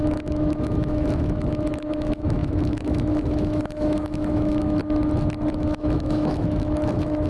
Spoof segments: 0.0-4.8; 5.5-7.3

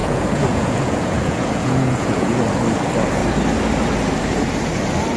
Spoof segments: 0.0-2.4

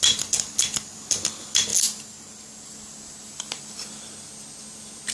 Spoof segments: none

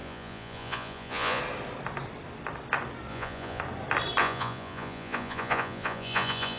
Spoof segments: 0.0-1.4; 3.1-3.6; 4.2-6.6

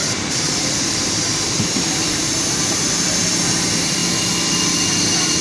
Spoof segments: 0.0-4.0

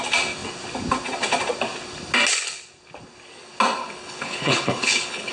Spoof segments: 3.8-5.3

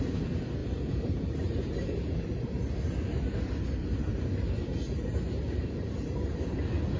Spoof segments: 0.6-2.4; 3.8-6.4

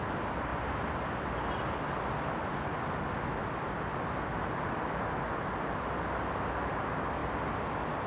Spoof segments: none